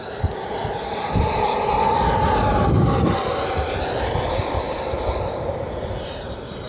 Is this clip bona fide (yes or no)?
yes